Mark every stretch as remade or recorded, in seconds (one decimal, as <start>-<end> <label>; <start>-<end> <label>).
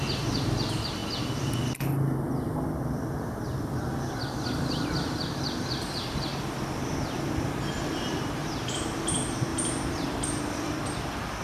0.0-1.0 remade; 1.0-3.5 recorded; 3.5-6.3 remade; 6.3-8.2 recorded; 8.2-11.4 remade